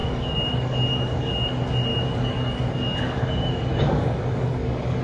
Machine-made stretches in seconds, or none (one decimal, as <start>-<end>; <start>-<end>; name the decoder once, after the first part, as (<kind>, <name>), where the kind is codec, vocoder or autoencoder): 0.0-1.5 (codec, DAC); 1.9-5.0